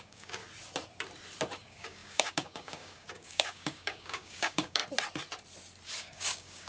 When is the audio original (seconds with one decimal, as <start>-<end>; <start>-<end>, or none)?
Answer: 0.4-1.6; 4.8-6.0